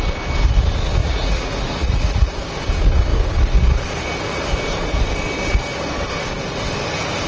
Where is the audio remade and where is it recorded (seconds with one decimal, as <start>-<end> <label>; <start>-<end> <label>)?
0.0-1.0 recorded; 1.0-2.3 remade; 2.3-7.3 recorded